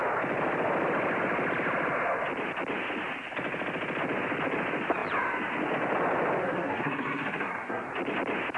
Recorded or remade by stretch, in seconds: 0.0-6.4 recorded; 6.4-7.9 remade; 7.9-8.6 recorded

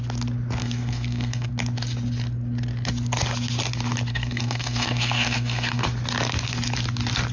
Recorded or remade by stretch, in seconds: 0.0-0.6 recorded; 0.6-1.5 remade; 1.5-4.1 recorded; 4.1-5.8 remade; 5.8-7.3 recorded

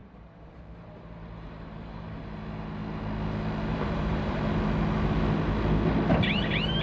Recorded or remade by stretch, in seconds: 0.0-2.2 remade; 2.2-3.7 recorded; 3.7-4.4 remade; 4.4-6.8 recorded

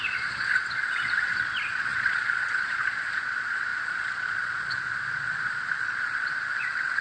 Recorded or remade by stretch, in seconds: 0.0-7.0 remade